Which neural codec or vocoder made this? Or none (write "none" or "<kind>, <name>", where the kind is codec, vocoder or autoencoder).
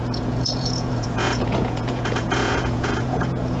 vocoder, Vocos